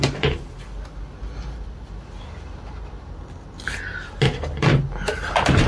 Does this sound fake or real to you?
real